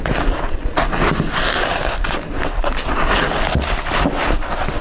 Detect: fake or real real